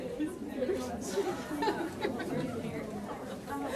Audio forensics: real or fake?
fake